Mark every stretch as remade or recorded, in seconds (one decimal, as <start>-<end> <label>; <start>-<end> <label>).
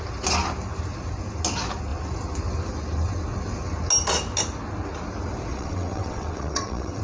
0.0-5.5 recorded; 5.5-7.0 remade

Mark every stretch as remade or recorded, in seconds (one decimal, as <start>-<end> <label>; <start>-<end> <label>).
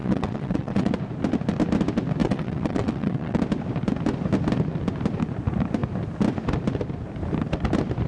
0.0-0.9 remade; 0.9-2.2 recorded; 2.2-3.4 remade; 3.4-8.1 recorded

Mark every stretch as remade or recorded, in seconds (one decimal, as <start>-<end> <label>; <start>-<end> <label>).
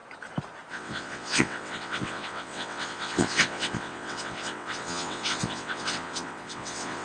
0.0-0.7 recorded; 0.7-7.0 remade